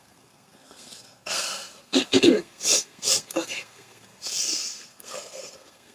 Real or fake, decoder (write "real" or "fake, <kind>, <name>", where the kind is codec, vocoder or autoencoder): fake, codec, SNAC